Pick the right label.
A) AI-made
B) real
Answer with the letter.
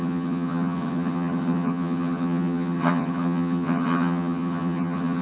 A